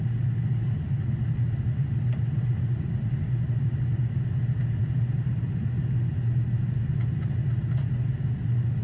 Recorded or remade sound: recorded